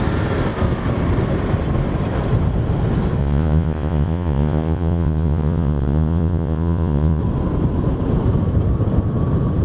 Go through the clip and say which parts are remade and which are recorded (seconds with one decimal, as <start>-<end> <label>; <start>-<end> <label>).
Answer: 0.0-3.2 recorded; 3.2-7.2 remade; 7.2-9.6 recorded